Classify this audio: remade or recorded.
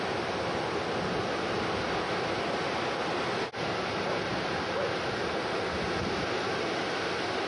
recorded